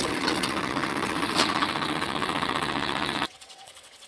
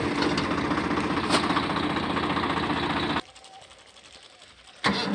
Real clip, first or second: second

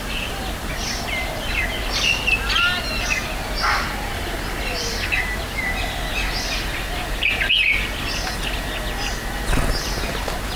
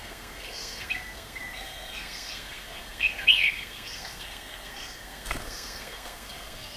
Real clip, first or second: first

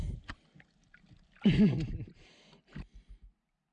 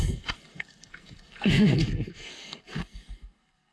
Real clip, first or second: first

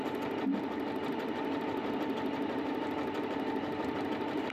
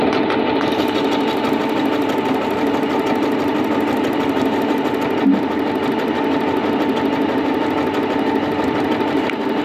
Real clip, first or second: second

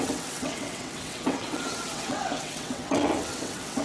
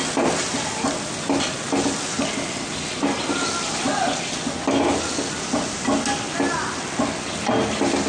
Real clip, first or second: second